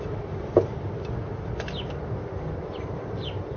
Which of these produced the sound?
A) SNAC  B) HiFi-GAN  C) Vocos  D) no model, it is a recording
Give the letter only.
D